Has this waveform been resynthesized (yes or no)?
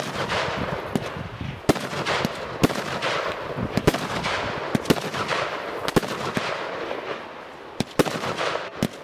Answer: no